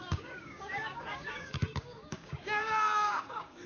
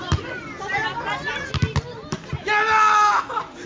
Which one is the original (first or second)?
second